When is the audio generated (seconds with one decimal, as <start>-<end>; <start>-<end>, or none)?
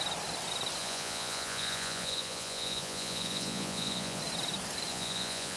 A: 0.8-4.2; 4.9-5.6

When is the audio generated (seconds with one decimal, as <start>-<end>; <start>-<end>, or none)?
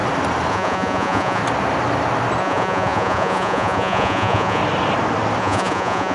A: 0.5-1.4; 2.4-4.6; 5.4-6.1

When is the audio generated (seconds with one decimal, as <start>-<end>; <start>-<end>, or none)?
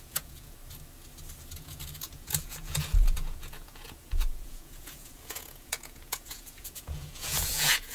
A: 0.0-0.6; 1.5-7.9